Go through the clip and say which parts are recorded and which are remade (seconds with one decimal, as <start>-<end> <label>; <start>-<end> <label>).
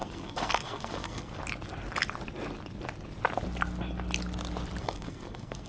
0.0-1.4 remade; 1.4-4.8 recorded; 4.8-5.7 remade